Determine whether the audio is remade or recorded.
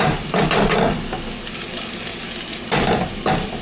recorded